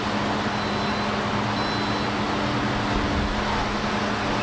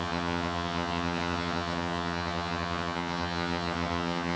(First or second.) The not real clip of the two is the second